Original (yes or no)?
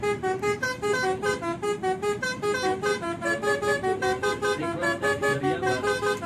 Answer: yes